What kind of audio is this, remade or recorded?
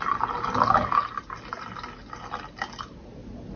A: recorded